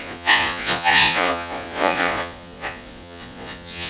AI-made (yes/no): yes